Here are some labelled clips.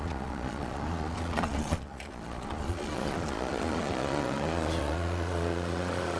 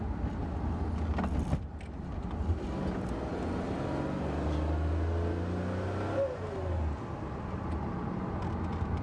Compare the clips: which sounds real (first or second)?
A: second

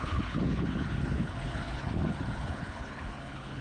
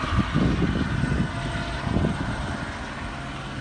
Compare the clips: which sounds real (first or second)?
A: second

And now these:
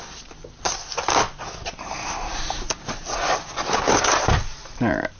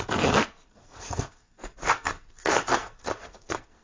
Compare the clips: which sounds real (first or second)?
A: first